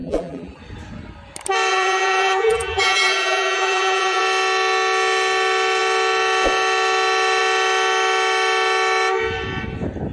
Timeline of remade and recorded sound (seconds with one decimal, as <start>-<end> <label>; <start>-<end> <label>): 0.0-0.6 remade; 0.6-1.7 recorded; 1.7-4.2 remade; 4.2-10.1 recorded